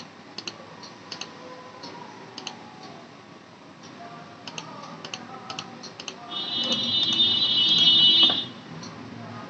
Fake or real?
real